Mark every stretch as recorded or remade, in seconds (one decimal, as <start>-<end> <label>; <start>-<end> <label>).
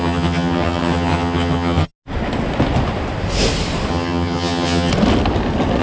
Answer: 0.0-1.9 remade; 1.9-3.9 recorded; 3.9-4.9 remade; 4.9-5.8 recorded